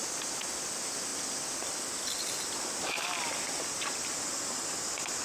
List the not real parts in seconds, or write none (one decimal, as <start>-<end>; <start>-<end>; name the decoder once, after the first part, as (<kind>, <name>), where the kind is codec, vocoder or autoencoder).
none